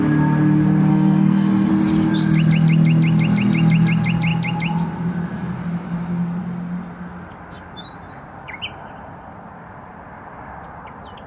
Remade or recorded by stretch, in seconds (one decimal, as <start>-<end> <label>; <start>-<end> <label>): 0.0-0.9 recorded; 0.9-1.7 remade; 1.7-11.3 recorded